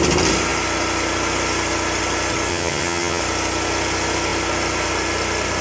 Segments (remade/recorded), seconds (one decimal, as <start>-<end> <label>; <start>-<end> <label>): 0.0-2.5 recorded; 2.5-3.2 remade; 3.2-5.6 recorded